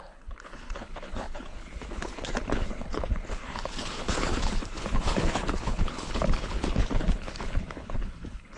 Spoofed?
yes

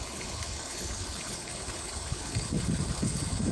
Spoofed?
yes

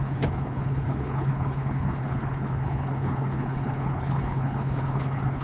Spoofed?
yes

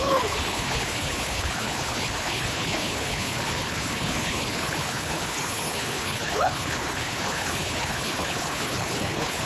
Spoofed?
yes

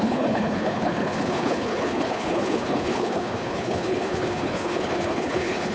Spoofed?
yes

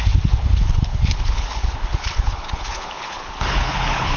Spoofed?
yes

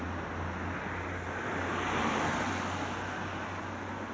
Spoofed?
no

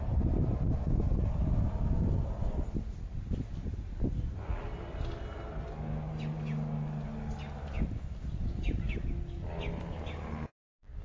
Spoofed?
no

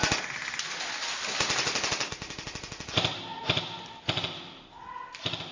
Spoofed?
no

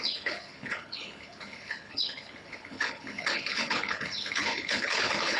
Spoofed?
yes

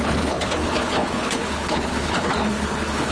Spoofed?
yes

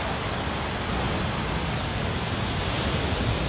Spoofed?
no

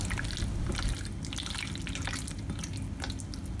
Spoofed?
no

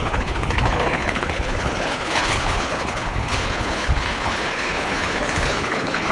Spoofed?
yes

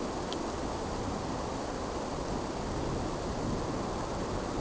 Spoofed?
no